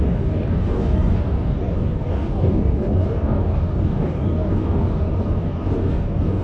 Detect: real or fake fake